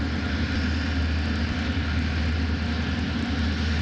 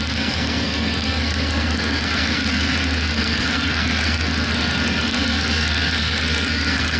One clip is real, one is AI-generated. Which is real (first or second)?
first